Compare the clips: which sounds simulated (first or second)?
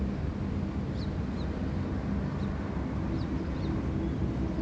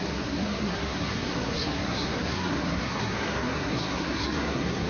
second